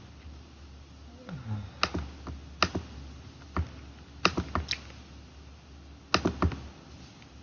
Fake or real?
real